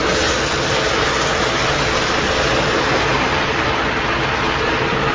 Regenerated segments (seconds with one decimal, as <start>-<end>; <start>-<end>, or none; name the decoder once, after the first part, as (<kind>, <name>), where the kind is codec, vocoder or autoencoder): none